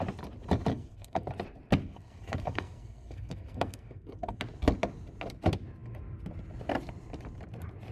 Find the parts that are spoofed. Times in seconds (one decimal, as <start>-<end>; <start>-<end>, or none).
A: 0.7-1.3; 1.8-4.4